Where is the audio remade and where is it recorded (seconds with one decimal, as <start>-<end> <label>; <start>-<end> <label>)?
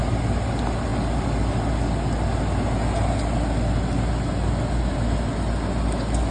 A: 0.0-6.3 recorded